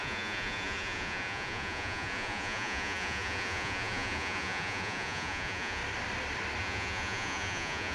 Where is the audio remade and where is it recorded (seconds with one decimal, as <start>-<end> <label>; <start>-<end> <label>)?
0.0-5.8 remade; 5.8-6.6 recorded; 6.6-7.9 remade